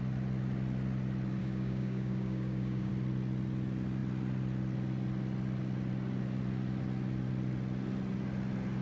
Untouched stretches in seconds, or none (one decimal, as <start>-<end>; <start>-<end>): 0.0-1.4; 2.9-8.8